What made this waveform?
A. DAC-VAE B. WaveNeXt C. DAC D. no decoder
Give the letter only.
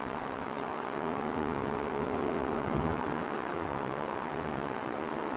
B